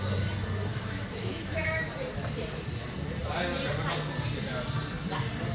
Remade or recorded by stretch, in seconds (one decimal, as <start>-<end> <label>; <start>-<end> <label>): 0.0-0.7 recorded; 0.7-1.9 remade; 1.9-5.5 recorded